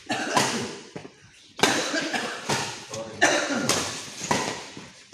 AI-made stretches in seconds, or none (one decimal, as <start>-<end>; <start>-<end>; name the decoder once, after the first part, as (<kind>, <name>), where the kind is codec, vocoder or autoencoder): 1.0-2.5 (vocoder, BigVGAN v2)